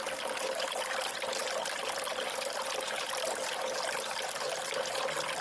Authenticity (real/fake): real